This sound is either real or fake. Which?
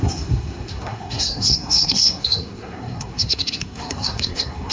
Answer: fake